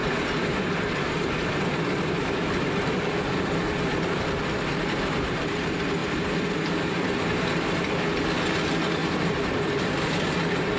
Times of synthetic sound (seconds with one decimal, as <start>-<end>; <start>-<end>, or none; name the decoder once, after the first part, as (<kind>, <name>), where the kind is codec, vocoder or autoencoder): 0.0-1.3 (vocoder, BigVGAN v2); 6.0-7.8; 9.0-9.7